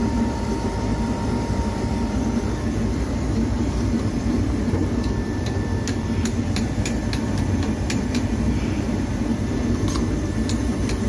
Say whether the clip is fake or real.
fake